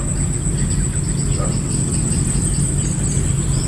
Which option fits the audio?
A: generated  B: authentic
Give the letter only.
B